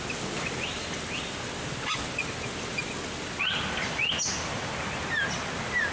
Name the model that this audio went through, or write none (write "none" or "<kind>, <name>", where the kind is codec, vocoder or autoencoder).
none